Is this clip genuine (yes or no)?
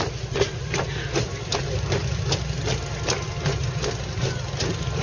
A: yes